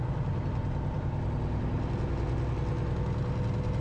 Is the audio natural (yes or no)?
yes